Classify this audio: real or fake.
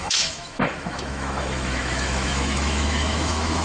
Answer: fake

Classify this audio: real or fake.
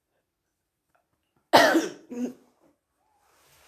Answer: real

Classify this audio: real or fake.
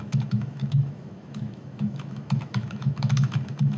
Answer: fake